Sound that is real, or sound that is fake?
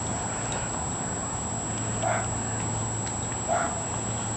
real